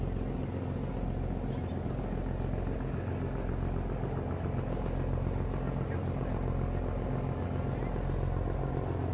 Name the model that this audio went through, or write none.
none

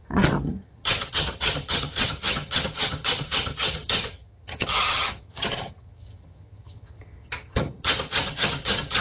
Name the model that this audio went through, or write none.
vocoder, HiFi-GAN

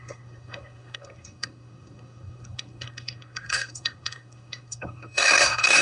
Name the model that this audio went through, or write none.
codec, SNAC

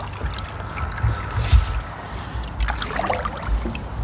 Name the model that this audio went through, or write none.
none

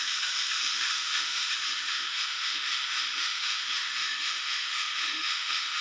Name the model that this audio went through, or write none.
autoencoder, DAC-VAE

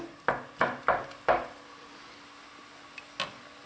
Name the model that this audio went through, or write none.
none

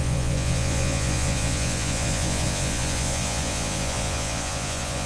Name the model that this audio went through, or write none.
vocoder, Vocos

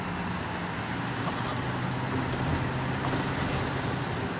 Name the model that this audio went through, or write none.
none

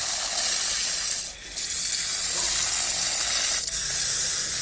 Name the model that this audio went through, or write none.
none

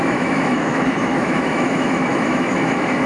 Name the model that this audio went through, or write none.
autoencoder, DAC-VAE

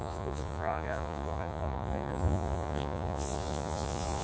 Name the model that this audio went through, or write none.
vocoder, Vocos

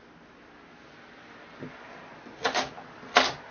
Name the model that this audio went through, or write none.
none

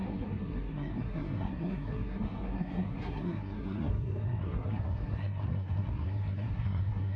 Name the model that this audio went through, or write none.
codec, SNAC